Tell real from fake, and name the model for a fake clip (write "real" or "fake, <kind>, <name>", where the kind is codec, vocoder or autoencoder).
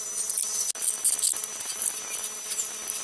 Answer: real